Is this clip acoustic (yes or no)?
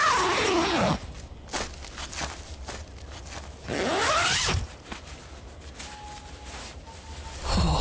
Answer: yes